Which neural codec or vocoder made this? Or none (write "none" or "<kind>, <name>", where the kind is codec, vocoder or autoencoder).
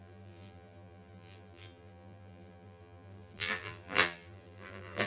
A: vocoder, BigVGAN v2